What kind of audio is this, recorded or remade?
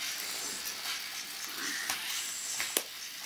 recorded